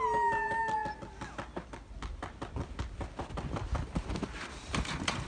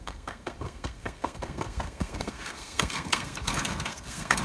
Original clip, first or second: first